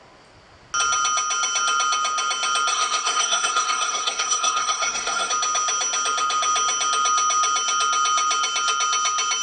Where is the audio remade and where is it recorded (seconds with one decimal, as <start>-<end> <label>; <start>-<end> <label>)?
0.0-2.7 recorded; 2.7-5.3 remade; 5.3-9.4 recorded